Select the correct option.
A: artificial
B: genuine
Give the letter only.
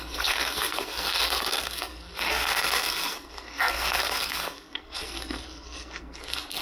A